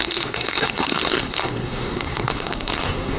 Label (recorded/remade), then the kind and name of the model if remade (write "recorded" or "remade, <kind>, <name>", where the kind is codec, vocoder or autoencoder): remade, codec, SNAC